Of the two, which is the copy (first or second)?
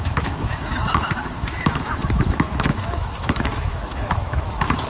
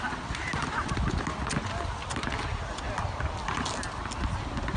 first